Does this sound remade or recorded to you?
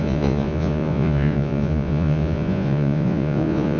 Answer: remade